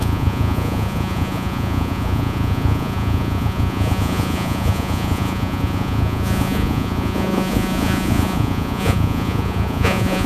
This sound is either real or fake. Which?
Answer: fake